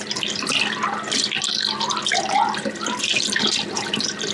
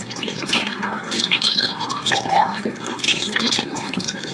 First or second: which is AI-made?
second